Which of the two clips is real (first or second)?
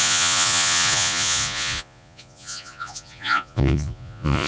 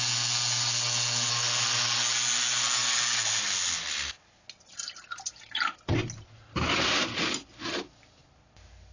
second